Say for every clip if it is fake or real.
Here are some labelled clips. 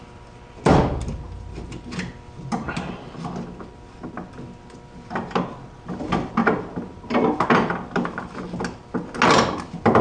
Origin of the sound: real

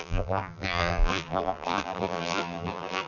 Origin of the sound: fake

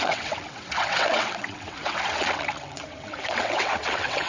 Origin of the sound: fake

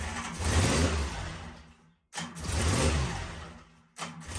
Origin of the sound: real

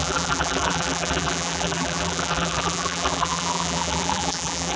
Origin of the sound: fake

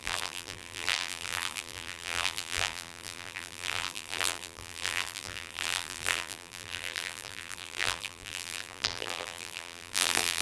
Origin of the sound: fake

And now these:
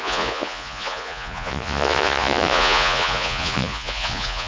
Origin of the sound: fake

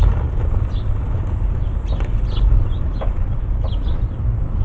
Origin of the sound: real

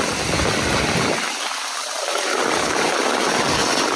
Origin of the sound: real